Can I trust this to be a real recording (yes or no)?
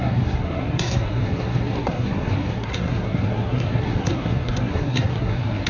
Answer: no